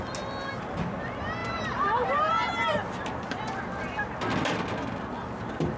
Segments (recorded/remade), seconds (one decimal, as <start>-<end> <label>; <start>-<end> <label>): 0.0-5.8 recorded